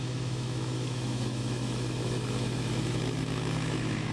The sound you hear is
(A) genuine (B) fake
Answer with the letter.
B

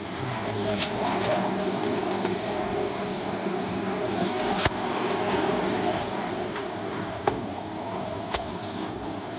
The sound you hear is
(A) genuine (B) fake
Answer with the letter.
B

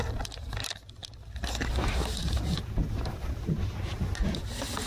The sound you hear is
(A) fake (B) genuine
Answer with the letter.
B